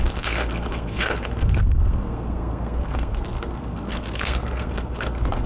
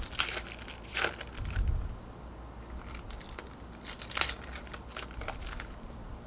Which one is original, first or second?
second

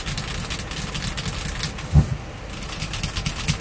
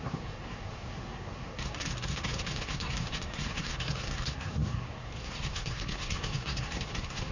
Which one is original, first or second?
first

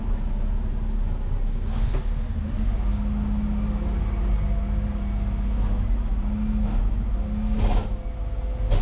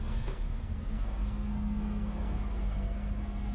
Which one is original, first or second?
first